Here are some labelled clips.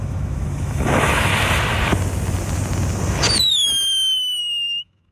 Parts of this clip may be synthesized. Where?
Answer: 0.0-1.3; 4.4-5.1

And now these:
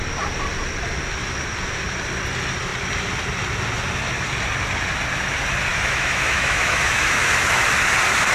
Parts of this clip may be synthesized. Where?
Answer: 5.7-7.6

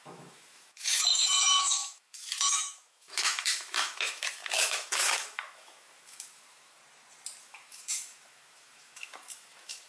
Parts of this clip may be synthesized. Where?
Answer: 0.0-6.8; 7.4-9.9